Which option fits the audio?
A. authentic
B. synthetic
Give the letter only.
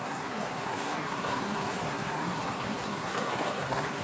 B